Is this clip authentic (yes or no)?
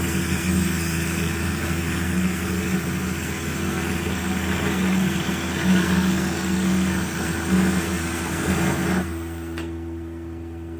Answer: no